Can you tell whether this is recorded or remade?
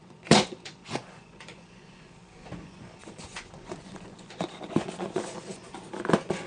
remade